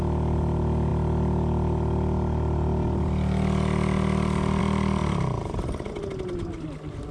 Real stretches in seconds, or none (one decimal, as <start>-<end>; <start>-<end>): 0.0-5.0; 5.9-7.1